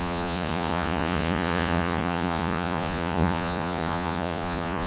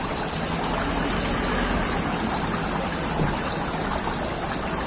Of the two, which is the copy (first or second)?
first